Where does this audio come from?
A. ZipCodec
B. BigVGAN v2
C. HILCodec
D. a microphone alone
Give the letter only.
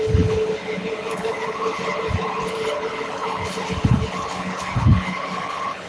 C